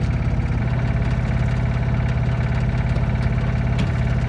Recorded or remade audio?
recorded